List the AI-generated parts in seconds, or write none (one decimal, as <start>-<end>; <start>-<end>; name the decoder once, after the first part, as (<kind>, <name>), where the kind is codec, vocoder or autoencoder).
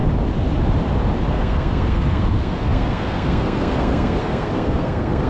1.3-5.3 (codec, SNAC)